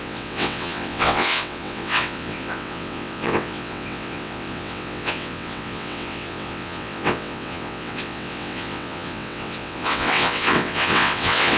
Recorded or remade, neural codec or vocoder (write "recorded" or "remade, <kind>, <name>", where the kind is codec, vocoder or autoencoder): remade, vocoder, WaveNeXt